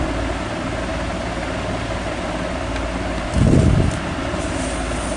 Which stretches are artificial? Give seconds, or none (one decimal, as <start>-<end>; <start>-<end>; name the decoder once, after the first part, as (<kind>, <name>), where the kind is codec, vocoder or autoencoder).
none

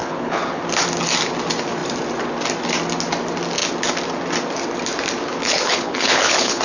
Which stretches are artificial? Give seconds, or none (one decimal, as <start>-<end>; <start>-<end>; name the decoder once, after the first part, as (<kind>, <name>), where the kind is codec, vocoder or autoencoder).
0.0-0.6 (codec, HILCodec); 5.4-6.6

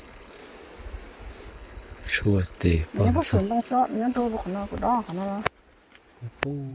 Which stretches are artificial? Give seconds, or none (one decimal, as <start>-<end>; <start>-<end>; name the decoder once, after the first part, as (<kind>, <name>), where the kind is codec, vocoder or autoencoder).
0.0-0.4 (codec, HILCodec); 1.5-2.8; 3.6-4.2

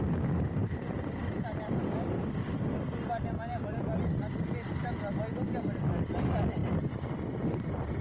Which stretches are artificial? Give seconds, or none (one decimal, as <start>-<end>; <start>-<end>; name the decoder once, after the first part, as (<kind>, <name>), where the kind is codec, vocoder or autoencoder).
none

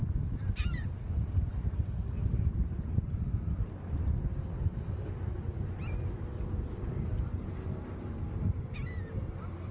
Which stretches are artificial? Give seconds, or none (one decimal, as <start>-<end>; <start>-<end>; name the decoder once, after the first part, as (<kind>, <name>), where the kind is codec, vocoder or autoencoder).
none

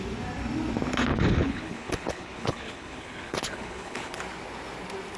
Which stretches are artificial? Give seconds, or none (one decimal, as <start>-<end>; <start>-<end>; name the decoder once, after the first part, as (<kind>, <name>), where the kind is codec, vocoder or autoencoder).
1.1-4.2 (codec, HILCodec)

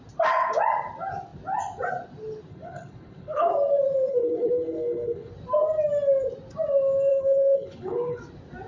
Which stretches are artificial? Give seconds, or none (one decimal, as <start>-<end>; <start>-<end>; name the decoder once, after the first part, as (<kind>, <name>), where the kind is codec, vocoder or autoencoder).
2.5-3.5 (codec, HILCodec); 4.1-5.3; 7.1-8.2

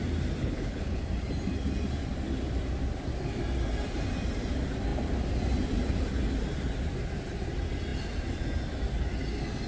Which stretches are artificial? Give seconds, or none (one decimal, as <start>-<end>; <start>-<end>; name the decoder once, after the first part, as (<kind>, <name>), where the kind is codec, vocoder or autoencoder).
0.4-1.0 (codec, HILCodec)